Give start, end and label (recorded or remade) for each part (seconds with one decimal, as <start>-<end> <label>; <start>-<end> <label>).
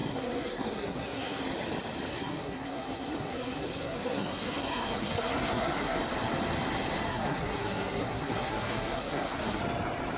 0.0-1.4 remade; 1.4-2.1 recorded; 2.1-6.0 remade; 6.0-7.1 recorded; 7.1-9.6 remade; 9.6-10.2 recorded